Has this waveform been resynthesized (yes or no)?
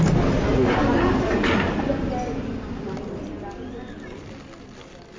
no